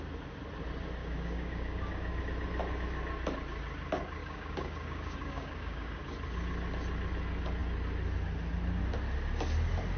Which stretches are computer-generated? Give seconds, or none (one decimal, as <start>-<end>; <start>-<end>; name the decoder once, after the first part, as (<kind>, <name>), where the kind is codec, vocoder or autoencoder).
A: 1.0-2.2 (codec, DAC); 4.2-6.0